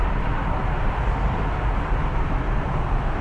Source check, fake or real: real